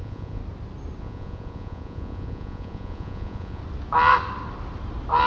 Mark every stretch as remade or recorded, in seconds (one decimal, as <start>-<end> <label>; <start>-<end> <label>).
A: 0.0-0.4 remade; 0.4-1.0 recorded; 1.0-3.6 remade; 3.6-5.3 recorded